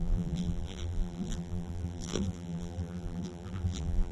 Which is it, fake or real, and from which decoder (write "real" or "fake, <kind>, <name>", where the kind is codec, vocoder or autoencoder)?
fake, vocoder, BigVGAN v2